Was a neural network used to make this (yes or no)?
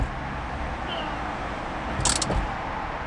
no